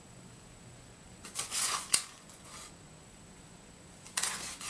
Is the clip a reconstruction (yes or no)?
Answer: yes